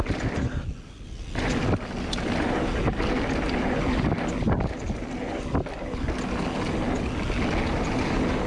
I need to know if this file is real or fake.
real